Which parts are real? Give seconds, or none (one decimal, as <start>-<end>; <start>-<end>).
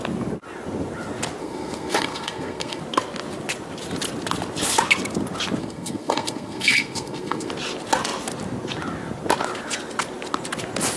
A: 0.0-1.4; 2.8-5.6; 7.5-11.0